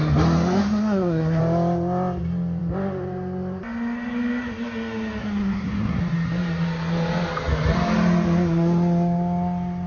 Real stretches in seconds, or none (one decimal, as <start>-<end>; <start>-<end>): 0.0-0.6; 1.4-5.2; 6.0-9.9